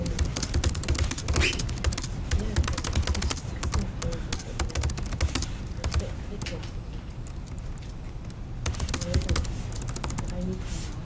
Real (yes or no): yes